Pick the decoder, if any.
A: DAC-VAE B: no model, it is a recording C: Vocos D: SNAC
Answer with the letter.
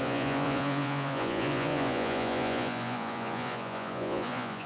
C